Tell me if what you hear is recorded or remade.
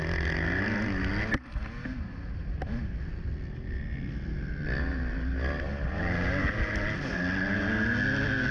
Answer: recorded